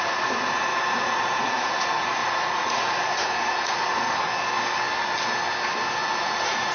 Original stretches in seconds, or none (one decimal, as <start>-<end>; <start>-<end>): 4.3-6.2